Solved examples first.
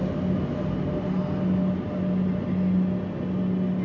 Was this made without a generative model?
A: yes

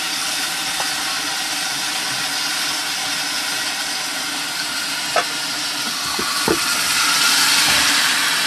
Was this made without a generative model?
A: yes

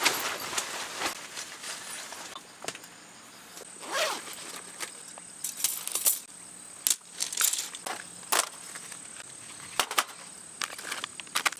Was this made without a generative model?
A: yes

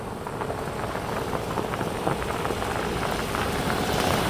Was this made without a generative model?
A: yes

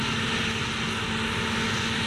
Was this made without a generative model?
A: yes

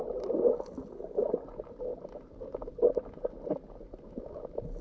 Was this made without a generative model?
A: yes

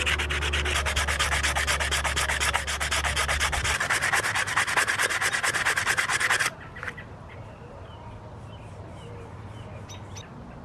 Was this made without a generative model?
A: yes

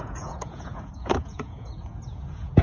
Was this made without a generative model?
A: no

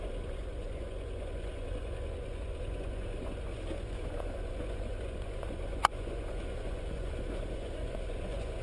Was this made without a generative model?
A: no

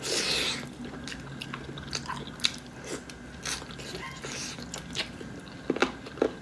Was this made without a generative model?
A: yes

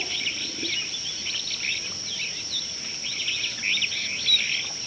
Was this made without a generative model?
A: yes